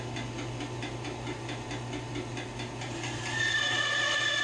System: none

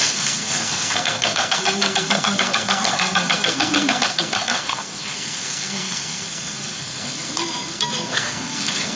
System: codec, SNAC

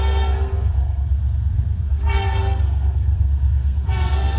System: codec, SNAC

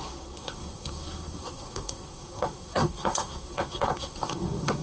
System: codec, SNAC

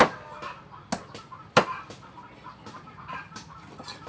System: none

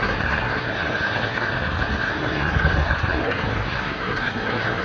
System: codec, SNAC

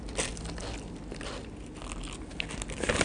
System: none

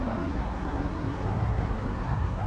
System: codec, SNAC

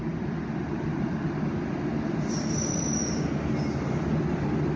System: none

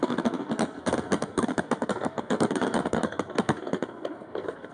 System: codec, SNAC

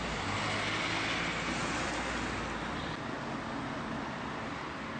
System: none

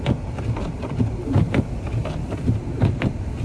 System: none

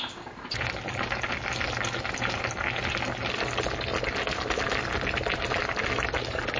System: none